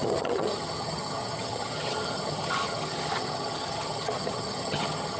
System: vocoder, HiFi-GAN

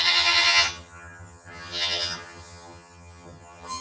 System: vocoder, HiFi-GAN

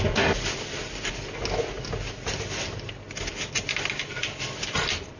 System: none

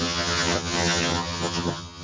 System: vocoder, HiFi-GAN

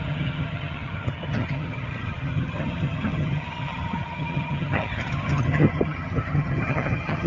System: vocoder, HiFi-GAN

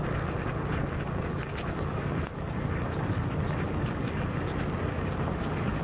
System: none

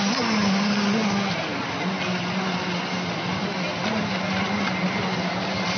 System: none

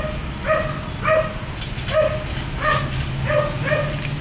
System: none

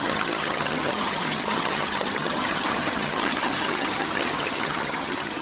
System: vocoder, HiFi-GAN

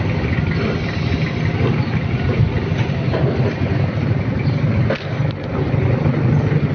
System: none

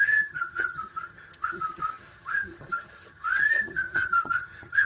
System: vocoder, HiFi-GAN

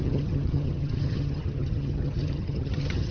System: vocoder, HiFi-GAN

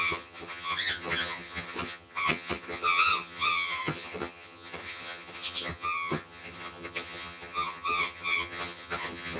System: vocoder, HiFi-GAN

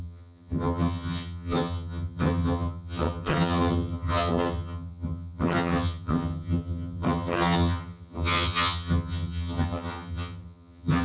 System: vocoder, HiFi-GAN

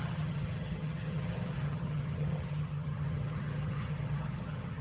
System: vocoder, HiFi-GAN